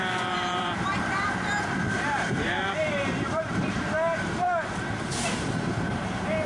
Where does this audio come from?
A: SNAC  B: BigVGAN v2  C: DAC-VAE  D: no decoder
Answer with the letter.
B